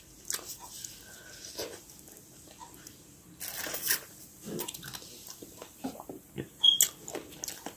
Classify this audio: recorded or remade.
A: recorded